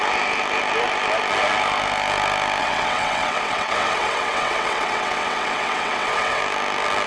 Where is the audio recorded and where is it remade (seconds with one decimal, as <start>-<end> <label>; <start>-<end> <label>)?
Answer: 0.0-2.6 recorded; 2.6-6.4 remade; 6.4-7.1 recorded